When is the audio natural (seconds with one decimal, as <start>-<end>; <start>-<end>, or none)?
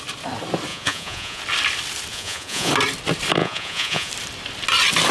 0.0-0.7; 1.4-2.1; 2.7-3.4; 4.1-5.1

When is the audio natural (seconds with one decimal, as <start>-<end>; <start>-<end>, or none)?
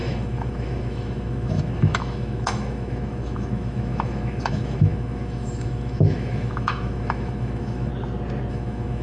7.9-8.5